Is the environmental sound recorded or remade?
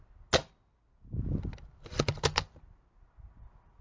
recorded